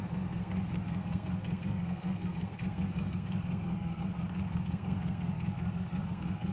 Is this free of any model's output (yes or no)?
no